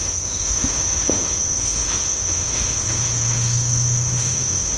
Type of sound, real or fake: fake